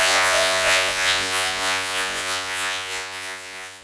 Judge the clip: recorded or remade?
remade